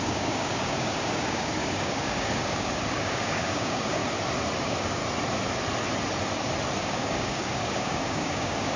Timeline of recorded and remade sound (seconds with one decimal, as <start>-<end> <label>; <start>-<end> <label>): 0.0-4.0 remade; 4.0-4.6 recorded; 4.6-5.0 remade; 5.0-6.8 recorded; 6.8-8.8 remade